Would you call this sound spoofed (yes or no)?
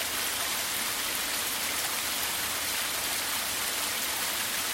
no